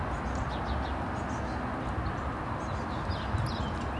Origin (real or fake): real